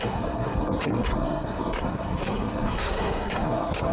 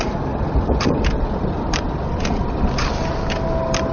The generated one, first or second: first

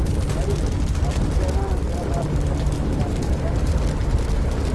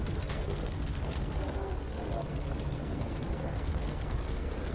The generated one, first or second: second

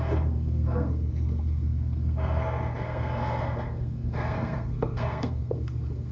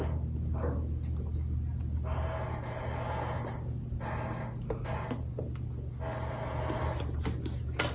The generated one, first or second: first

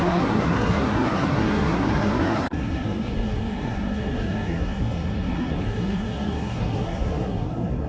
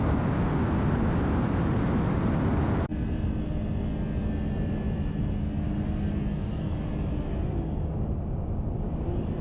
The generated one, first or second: first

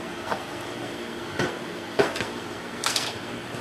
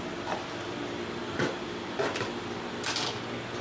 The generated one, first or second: first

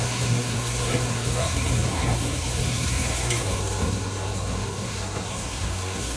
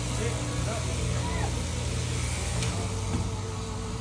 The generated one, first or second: first